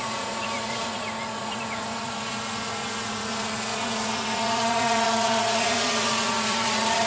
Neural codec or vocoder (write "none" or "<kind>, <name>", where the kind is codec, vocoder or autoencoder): vocoder, Vocos